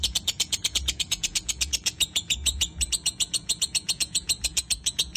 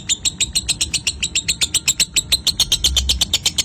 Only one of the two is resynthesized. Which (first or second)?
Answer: first